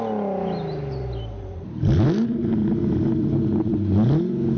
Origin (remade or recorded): recorded